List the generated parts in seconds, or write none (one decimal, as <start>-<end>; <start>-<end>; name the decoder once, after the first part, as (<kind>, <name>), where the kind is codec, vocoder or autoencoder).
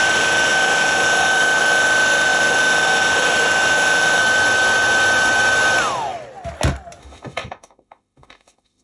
0.0-4.2 (autoencoder, DAC-VAE); 7.0-8.8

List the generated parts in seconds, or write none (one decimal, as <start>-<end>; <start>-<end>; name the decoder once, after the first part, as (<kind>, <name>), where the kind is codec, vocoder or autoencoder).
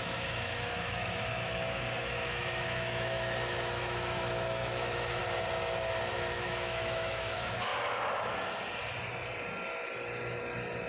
0.0-5.2 (autoencoder, DAC-VAE); 6.1-7.7